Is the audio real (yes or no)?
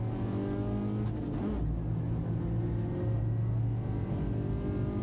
yes